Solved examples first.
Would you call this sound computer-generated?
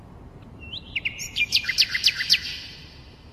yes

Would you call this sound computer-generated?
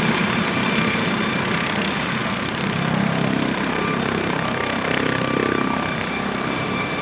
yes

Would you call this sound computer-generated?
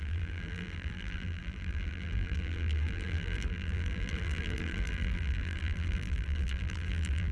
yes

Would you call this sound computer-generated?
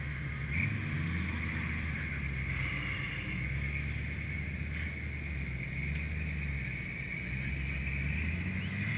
no